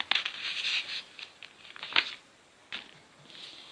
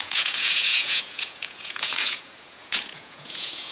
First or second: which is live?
first